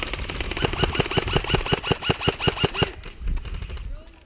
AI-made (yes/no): no